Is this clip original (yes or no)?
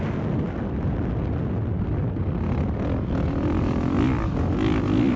yes